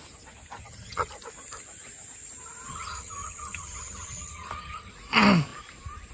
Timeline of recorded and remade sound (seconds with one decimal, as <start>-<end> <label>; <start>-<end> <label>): 0.0-0.6 recorded; 0.6-1.1 remade; 1.1-2.7 recorded; 2.7-4.9 remade; 4.9-6.1 recorded